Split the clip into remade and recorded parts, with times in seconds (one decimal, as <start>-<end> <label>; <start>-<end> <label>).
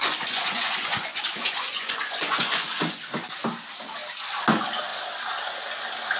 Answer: 0.0-3.0 remade; 3.0-6.2 recorded